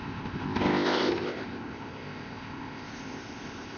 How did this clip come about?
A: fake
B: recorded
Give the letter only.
A